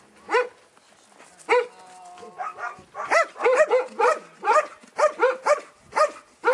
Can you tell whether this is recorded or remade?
recorded